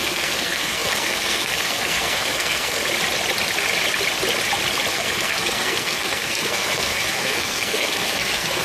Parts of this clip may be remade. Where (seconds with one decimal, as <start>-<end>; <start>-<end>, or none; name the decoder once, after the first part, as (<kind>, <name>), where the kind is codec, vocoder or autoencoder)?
0.0-2.8 (codec, SNAC); 4.9-8.6

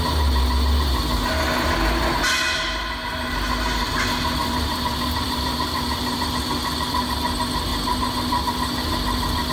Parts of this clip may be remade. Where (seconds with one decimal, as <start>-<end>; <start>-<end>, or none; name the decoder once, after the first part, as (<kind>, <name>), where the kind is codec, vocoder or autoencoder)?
4.4-6.3 (vocoder, BigVGAN v2)

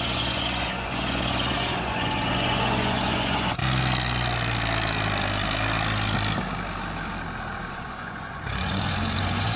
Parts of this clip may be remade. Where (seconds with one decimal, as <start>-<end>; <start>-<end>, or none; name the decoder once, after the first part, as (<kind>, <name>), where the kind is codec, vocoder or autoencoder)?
0.0-3.6 (vocoder, Vocos); 7.7-9.6

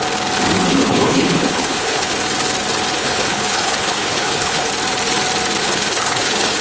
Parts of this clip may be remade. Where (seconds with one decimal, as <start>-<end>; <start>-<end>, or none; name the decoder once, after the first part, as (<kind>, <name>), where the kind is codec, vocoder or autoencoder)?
0.7-2.1 (codec, HILCodec); 3.0-4.7; 5.6-6.6

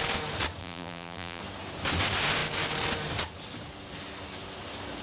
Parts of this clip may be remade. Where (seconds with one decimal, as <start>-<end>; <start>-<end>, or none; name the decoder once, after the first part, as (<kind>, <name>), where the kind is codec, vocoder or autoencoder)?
0.6-1.4 (vocoder, BigVGAN v2)

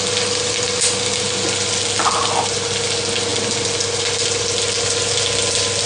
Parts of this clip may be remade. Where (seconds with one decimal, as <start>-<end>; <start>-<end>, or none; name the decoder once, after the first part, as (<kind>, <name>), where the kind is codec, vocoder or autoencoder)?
none

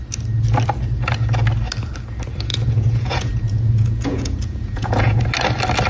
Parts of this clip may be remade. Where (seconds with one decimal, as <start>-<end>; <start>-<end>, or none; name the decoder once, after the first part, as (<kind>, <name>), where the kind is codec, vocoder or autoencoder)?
2.5-5.2 (vocoder, Vocos)